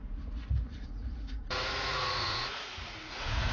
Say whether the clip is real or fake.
fake